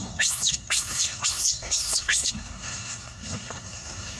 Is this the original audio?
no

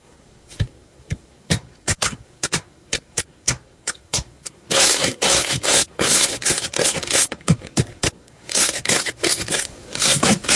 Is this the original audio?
no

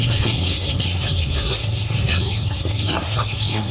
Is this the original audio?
no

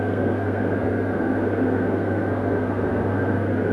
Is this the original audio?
no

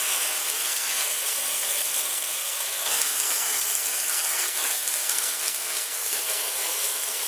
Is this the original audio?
no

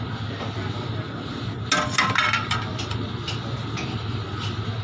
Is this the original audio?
yes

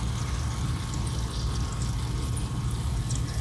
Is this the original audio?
yes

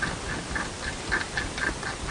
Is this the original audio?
yes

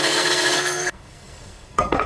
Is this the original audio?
no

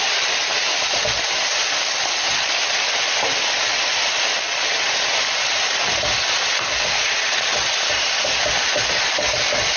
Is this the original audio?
yes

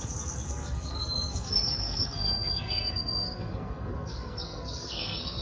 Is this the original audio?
no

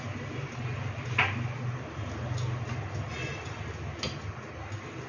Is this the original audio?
yes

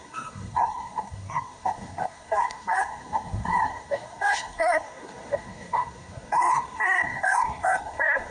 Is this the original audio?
no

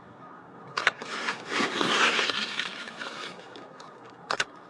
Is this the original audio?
no